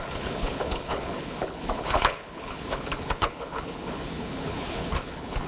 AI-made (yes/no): yes